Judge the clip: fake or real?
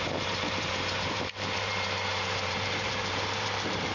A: fake